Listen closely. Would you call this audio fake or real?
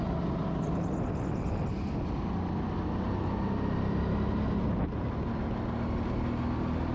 real